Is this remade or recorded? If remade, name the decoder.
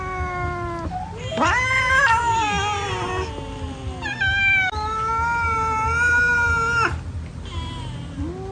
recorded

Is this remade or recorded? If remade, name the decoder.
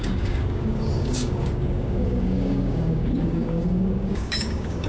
remade, codec, DAC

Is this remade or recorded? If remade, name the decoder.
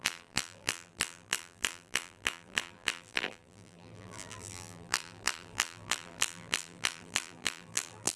remade, vocoder, BigVGAN v2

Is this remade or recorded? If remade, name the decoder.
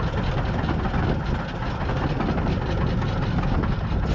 recorded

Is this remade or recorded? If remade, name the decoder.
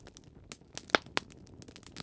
recorded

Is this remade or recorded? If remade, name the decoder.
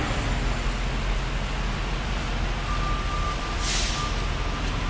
recorded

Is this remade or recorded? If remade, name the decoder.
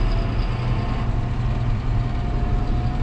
recorded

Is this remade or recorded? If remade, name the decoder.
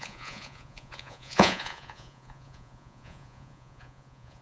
remade, vocoder, Vocos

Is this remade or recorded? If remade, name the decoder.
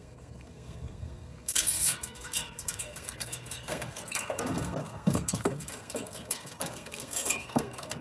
remade, codec, SNAC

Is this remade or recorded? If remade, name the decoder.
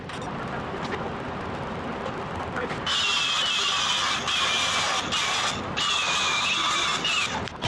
recorded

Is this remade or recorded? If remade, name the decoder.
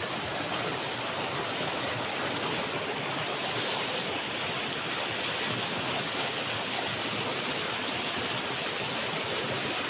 recorded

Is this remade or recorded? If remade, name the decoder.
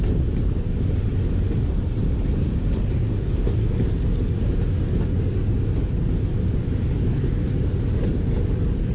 recorded